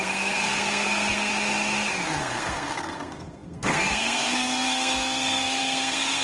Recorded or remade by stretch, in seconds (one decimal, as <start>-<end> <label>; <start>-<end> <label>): 0.0-1.3 remade; 1.3-2.2 recorded; 2.2-6.2 remade